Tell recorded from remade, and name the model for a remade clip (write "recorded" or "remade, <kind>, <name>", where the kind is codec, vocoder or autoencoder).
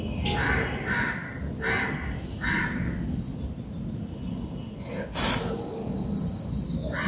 recorded